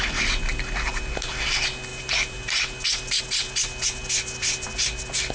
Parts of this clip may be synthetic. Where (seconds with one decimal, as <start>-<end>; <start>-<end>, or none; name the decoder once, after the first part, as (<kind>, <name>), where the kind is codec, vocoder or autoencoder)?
none